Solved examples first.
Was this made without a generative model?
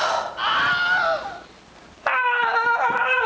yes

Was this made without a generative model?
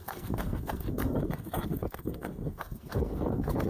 no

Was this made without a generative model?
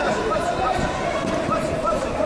no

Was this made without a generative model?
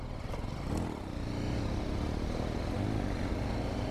yes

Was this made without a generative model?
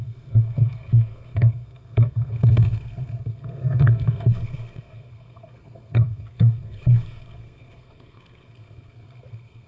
no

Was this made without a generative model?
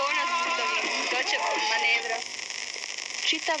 yes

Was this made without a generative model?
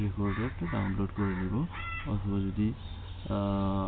yes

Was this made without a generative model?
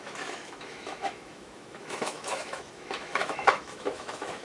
no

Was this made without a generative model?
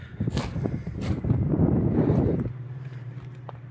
no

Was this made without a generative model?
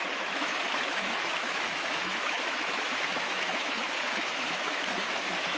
no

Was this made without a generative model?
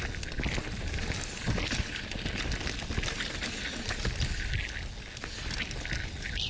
yes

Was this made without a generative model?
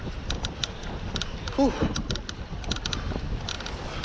yes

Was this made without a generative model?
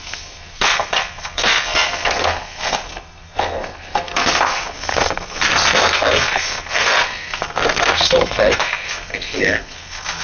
no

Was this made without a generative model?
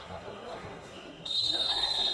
no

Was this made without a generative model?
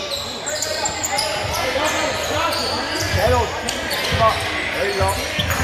yes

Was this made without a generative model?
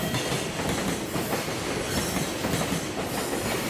yes